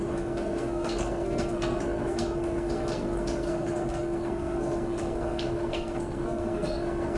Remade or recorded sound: remade